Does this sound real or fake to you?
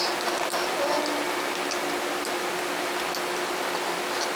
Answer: real